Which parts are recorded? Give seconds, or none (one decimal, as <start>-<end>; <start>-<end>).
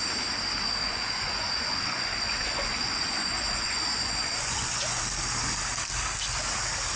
0.0-0.8; 5.0-7.0